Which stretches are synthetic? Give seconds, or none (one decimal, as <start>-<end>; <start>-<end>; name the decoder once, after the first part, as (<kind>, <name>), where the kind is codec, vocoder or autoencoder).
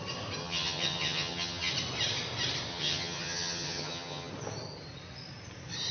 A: 0.4-1.7 (vocoder, HiFi-GAN); 2.7-4.3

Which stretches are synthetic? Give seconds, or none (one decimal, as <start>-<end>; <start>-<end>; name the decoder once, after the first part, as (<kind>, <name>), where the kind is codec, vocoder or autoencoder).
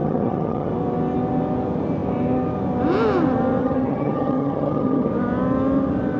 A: 0.0-0.7 (vocoder, HiFi-GAN); 3.6-5.1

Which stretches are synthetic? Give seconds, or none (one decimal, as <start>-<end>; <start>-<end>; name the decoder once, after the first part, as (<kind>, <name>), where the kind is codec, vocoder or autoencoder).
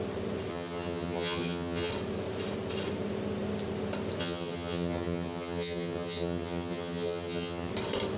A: 0.5-1.9 (vocoder, HiFi-GAN); 4.2-7.7